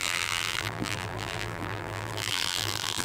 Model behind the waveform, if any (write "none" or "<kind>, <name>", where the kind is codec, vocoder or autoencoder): vocoder, BigVGAN v2